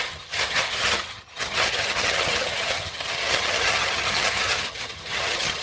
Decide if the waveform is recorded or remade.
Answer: remade